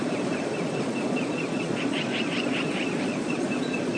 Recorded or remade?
remade